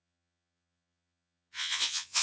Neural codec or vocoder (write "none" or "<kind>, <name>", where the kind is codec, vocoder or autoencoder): vocoder, Vocos